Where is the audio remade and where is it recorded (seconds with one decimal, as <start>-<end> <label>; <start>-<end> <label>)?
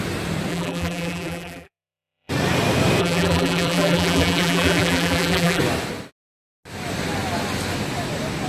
0.0-0.5 recorded; 0.5-2.3 remade; 2.3-3.0 recorded; 3.0-5.6 remade; 5.6-8.5 recorded